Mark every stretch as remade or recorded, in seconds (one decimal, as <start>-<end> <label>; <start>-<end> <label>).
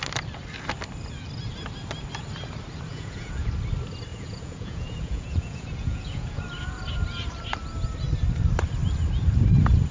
0.0-2.9 recorded; 2.9-3.5 remade; 3.5-4.1 recorded; 4.1-6.4 remade; 6.4-9.9 recorded